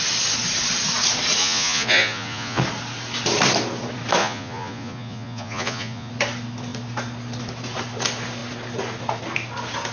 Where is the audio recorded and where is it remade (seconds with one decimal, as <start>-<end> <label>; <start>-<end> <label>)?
0.0-1.4 recorded; 1.4-2.6 remade; 2.6-4.2 recorded; 4.2-6.1 remade; 6.1-9.9 recorded